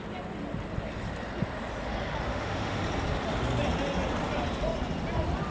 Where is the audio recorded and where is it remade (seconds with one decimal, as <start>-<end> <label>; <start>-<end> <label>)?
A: 0.0-2.3 recorded; 2.3-2.8 remade; 2.8-5.5 recorded

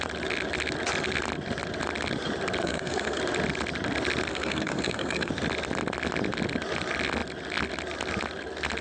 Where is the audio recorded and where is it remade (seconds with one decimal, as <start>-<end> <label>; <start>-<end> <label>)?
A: 0.0-2.6 recorded; 2.6-3.2 remade; 3.2-4.3 recorded; 4.3-5.3 remade; 5.3-8.8 recorded

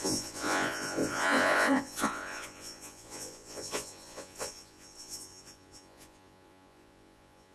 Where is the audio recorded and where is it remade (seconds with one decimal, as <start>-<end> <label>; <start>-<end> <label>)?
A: 0.0-7.5 remade

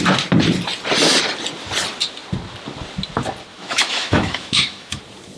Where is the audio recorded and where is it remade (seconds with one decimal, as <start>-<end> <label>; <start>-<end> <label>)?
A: 0.0-3.5 recorded; 3.5-5.0 remade; 5.0-5.4 recorded

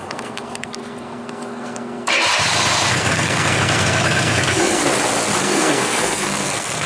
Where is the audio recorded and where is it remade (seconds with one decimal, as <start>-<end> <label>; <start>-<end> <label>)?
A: 0.0-2.1 remade; 2.1-2.9 recorded; 2.9-4.8 remade; 4.8-5.4 recorded; 5.4-6.9 remade

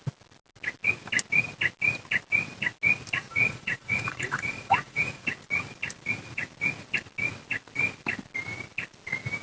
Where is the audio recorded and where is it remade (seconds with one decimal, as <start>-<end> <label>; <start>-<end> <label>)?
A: 0.0-3.3 recorded; 3.3-5.2 remade; 5.2-9.4 recorded

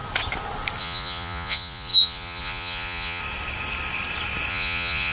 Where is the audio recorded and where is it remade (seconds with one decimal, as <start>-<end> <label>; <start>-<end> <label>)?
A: 0.0-0.8 recorded; 0.8-3.2 remade; 3.2-4.5 recorded; 4.5-5.1 remade

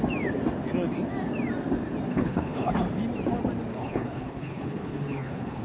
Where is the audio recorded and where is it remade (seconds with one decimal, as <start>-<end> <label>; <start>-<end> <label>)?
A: 0.0-2.1 recorded; 2.1-2.7 remade; 2.7-3.7 recorded; 3.7-5.6 remade